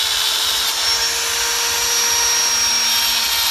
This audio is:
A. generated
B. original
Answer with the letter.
B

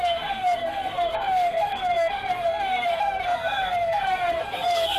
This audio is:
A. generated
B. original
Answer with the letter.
A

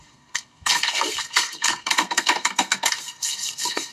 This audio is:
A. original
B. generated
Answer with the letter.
B